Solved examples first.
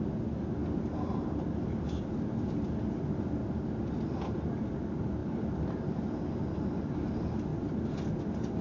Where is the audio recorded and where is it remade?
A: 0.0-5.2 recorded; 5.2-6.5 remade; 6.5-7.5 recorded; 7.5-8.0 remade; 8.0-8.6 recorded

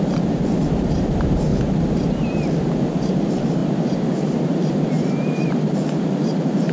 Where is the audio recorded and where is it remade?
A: 0.0-1.5 remade; 1.5-3.0 recorded; 3.0-6.7 remade

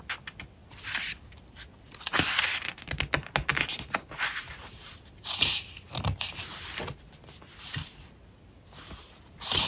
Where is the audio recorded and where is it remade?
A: 0.0-9.7 recorded

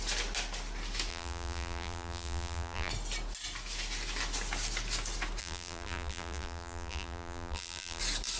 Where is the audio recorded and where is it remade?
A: 0.0-1.1 recorded; 1.1-2.9 remade; 2.9-5.4 recorded; 5.4-8.0 remade; 8.0-8.4 recorded

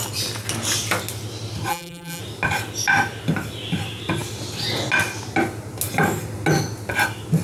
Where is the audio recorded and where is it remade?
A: 0.0-1.7 recorded; 1.7-2.2 remade; 2.2-7.4 recorded